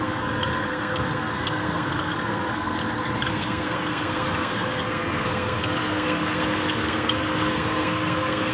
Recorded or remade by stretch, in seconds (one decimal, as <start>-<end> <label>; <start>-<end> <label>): 0.0-2.8 remade; 2.8-3.3 recorded; 3.3-8.5 remade